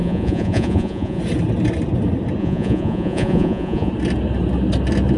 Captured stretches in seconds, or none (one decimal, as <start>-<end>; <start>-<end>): 1.2-2.4; 3.9-5.2